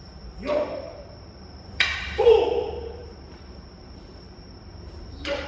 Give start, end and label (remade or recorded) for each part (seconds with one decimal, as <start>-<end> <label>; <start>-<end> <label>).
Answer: 0.0-5.5 remade